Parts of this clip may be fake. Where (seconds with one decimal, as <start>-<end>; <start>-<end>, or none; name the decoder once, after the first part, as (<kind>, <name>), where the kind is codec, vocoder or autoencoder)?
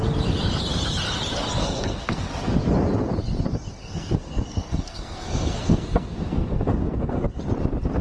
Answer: 1.6-2.3 (codec, SNAC); 3.8-7.4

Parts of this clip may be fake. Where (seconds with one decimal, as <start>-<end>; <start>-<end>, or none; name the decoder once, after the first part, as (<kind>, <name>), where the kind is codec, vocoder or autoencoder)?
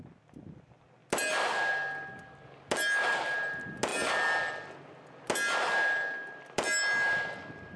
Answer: none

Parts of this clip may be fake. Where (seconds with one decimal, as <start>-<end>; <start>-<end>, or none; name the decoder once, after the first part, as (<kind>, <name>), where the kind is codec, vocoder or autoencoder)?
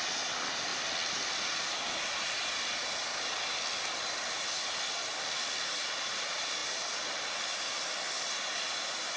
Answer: none